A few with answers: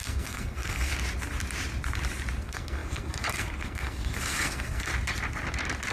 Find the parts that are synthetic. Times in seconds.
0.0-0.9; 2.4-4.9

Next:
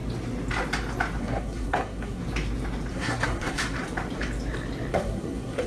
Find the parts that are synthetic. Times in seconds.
1.2-2.2; 2.9-3.6; 4.9-5.7

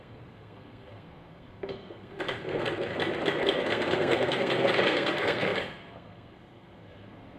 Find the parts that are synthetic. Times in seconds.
0.0-2.9; 3.4-7.4

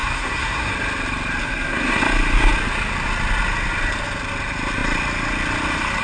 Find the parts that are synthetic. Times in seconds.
0.0-0.7; 1.4-2.0

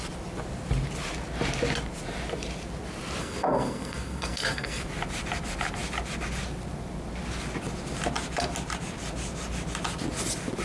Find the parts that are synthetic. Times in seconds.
3.2-4.8